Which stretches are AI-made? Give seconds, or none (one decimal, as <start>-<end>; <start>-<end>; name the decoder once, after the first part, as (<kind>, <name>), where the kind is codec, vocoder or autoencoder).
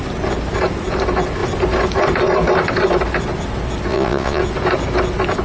3.9-4.4 (vocoder, Vocos)